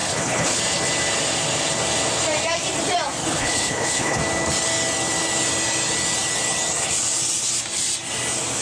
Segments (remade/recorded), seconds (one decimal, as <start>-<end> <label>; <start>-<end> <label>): 0.0-0.6 remade; 0.6-3.2 recorded; 3.2-4.2 remade; 4.2-8.6 recorded